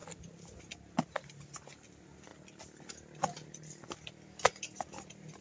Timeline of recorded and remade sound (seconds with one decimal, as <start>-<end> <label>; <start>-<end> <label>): 0.0-5.4 recorded